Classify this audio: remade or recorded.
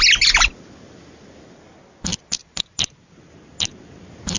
recorded